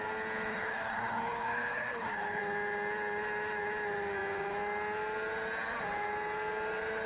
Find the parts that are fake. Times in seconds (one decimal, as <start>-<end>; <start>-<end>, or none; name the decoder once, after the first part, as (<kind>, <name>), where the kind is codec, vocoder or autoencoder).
0.5-2.4 (codec, HILCodec)

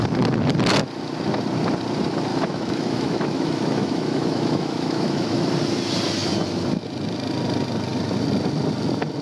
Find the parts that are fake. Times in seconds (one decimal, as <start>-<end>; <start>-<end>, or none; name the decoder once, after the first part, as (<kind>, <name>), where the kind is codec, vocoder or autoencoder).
2.3-5.5 (autoencoder, DAC-VAE)